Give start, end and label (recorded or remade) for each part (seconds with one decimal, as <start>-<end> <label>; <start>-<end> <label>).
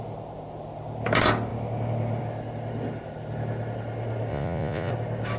0.0-4.3 recorded; 4.3-4.9 remade; 4.9-5.4 recorded